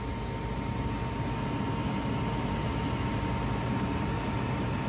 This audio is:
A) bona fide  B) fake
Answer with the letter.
A